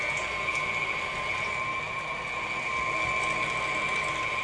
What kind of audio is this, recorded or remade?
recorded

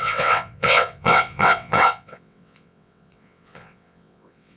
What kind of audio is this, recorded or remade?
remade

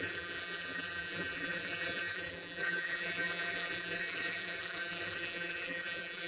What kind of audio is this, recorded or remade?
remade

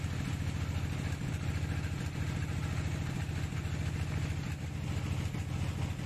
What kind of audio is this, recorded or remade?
recorded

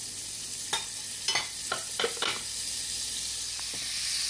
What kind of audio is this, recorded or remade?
recorded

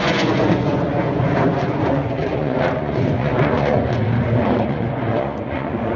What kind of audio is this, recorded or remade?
remade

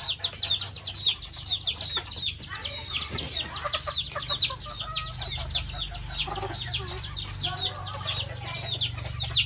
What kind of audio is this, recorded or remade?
recorded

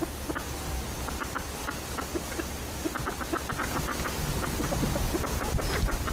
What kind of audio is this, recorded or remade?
remade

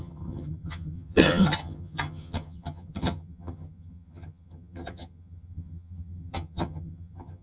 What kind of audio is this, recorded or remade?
remade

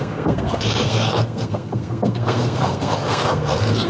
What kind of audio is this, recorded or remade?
remade